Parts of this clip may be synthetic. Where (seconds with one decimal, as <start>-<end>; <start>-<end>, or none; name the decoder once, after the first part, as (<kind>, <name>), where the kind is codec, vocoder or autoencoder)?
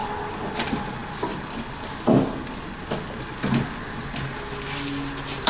none